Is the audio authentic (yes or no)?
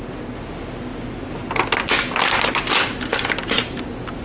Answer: yes